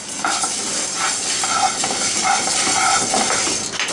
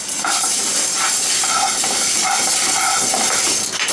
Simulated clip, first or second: second